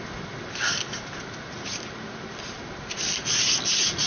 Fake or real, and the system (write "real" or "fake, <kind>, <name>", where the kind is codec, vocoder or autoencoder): real